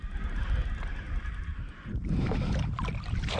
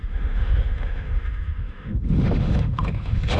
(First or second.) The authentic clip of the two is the first